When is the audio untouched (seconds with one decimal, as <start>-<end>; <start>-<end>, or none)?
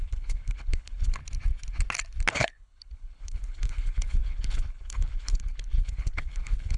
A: 1.2-2.3